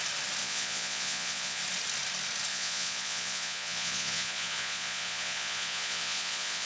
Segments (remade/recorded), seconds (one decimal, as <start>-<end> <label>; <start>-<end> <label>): 0.0-0.4 recorded; 0.4-1.6 remade; 1.6-2.5 recorded; 2.5-6.7 remade